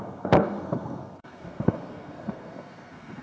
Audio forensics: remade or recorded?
remade